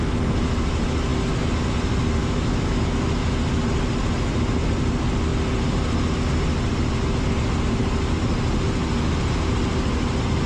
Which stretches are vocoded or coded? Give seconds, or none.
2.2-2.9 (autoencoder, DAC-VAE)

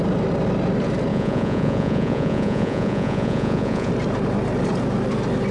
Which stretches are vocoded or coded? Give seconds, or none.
1.1-3.9 (vocoder, Vocos)

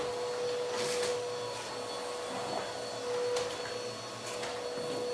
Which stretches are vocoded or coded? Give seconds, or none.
none